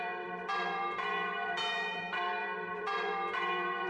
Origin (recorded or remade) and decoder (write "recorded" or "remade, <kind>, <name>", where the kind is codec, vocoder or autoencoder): remade, vocoder, BigVGAN v2